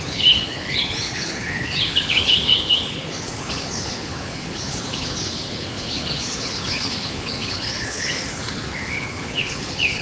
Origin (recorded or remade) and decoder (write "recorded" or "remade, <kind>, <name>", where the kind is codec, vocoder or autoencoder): remade, codec, HILCodec